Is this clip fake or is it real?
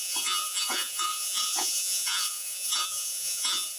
fake